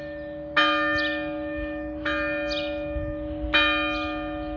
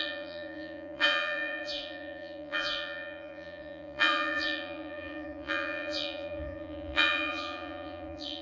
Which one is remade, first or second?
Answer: second